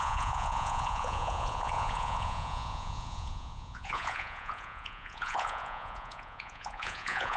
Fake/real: fake